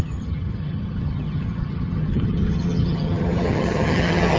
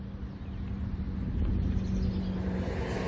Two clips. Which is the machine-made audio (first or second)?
first